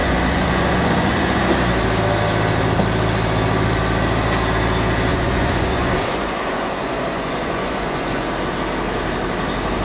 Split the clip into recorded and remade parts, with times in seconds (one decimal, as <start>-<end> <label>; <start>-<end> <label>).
0.0-1.4 remade; 1.4-5.1 recorded; 5.1-8.3 remade; 8.3-9.8 recorded